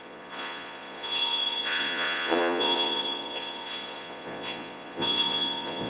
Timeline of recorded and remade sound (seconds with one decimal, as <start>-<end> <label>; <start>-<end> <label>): 0.0-5.9 remade